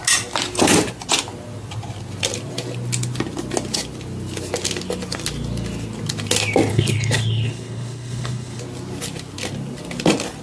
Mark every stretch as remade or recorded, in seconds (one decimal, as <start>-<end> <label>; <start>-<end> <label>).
0.0-6.7 recorded; 6.7-8.6 remade; 8.6-10.4 recorded